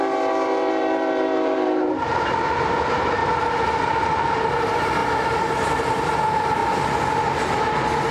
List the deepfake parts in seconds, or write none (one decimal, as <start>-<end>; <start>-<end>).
0.0-3.2; 4.1-6.6

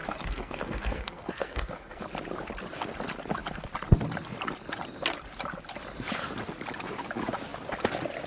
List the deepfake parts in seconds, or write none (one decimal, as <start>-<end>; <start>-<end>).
0.0-2.0